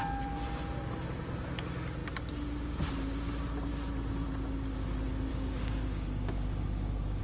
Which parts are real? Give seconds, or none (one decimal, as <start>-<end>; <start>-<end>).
0.0-5.3